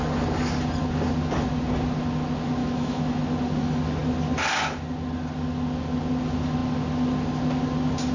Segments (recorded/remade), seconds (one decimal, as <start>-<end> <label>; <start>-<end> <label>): 0.0-2.6 recorded; 2.6-3.2 remade; 3.2-8.1 recorded